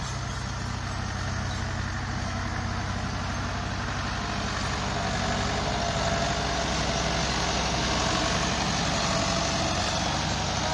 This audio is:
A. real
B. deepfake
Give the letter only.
A